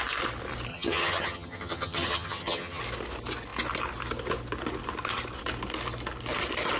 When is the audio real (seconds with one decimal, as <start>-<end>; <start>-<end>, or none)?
0.0-0.7; 2.8-6.8